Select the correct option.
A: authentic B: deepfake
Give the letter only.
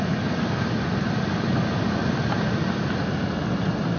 A